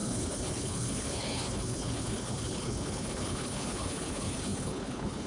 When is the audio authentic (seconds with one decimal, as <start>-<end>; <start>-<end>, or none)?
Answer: none